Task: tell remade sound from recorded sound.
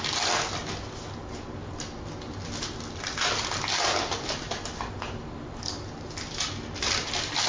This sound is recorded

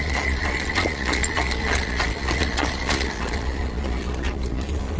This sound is remade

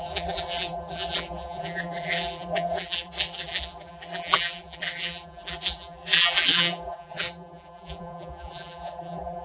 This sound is remade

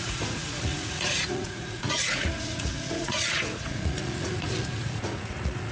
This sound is remade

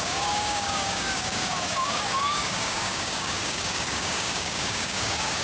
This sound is remade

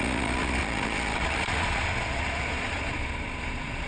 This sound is remade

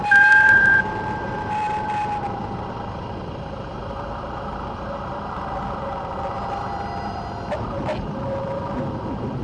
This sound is recorded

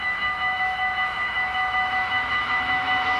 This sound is remade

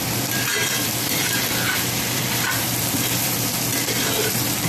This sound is remade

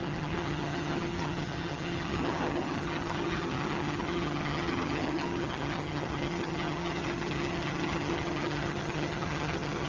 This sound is remade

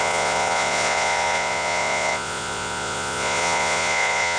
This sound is remade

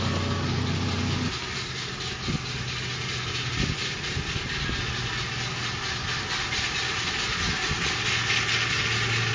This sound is recorded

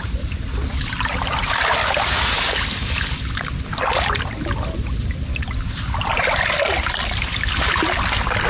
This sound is recorded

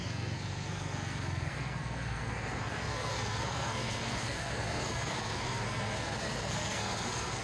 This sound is remade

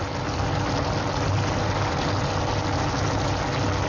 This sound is recorded